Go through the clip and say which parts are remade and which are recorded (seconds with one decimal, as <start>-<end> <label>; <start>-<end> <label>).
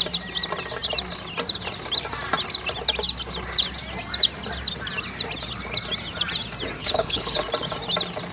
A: 0.0-6.8 recorded; 6.8-7.4 remade; 7.4-8.3 recorded